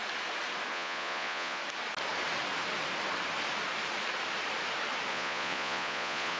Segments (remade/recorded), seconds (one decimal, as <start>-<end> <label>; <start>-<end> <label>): 0.0-0.7 recorded; 0.7-1.6 remade; 1.6-5.1 recorded; 5.1-6.4 remade